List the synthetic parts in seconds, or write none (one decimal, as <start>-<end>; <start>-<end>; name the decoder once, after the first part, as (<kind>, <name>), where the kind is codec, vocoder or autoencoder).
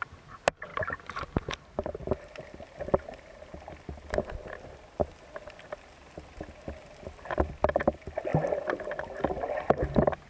none